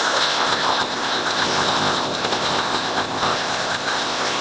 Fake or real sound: fake